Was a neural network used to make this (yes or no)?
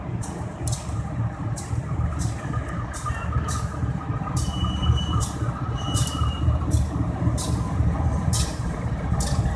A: yes